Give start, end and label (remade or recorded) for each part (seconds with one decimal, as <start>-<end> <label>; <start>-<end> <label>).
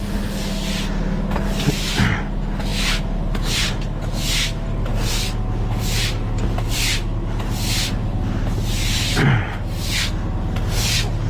0.0-11.3 recorded